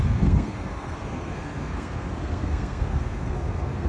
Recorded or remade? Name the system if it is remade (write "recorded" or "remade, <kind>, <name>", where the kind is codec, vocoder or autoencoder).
remade, codec, SNAC